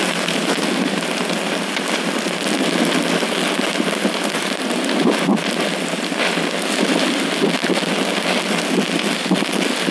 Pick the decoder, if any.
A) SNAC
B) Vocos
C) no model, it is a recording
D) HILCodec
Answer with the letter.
C